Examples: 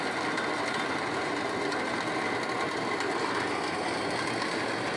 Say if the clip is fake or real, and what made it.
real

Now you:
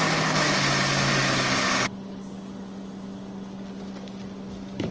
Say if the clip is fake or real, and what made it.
real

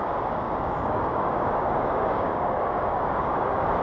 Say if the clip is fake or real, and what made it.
fake, codec, DAC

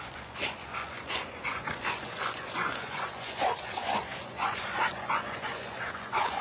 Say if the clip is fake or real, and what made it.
fake, vocoder, Vocos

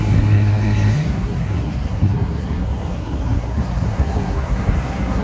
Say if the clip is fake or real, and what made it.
fake, codec, SNAC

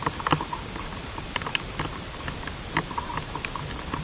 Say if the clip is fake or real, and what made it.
real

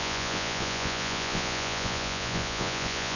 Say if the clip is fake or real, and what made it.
fake, vocoder, Vocos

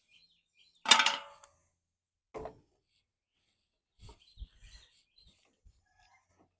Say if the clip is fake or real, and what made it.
real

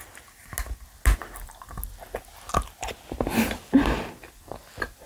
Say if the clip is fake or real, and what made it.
real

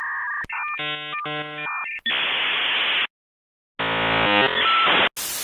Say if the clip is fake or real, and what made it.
real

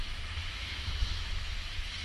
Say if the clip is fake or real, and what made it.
fake, autoencoder, DAC-VAE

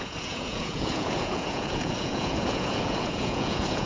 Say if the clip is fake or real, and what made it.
fake, vocoder, Vocos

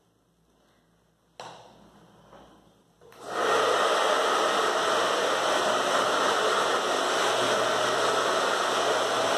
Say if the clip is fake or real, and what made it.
real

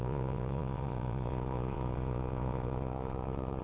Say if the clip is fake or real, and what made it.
fake, vocoder, Vocos